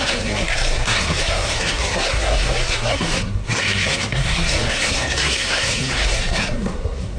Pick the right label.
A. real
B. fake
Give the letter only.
B